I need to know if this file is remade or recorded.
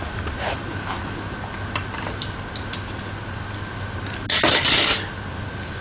recorded